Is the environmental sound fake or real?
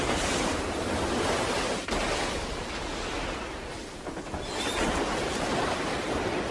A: real